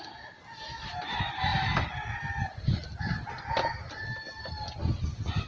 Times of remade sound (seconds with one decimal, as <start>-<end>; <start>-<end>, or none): none